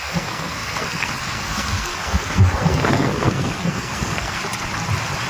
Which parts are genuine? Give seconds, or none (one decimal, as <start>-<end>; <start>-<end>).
4.4-5.3